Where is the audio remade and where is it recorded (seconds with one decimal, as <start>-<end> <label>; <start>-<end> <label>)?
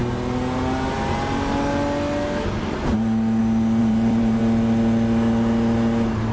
0.0-3.8 recorded; 3.8-4.4 remade; 4.4-6.3 recorded